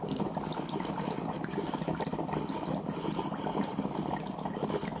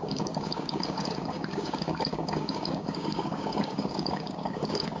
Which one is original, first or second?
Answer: first